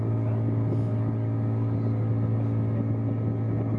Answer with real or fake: real